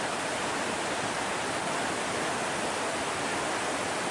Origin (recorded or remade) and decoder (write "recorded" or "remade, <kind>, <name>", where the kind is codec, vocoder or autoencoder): recorded